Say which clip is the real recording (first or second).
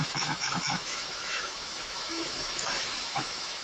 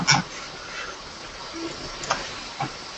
second